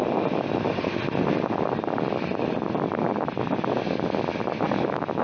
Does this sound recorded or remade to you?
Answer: recorded